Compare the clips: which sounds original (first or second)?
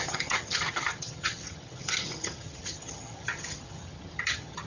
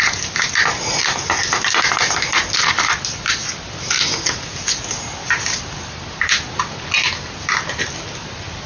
second